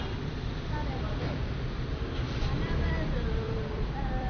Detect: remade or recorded remade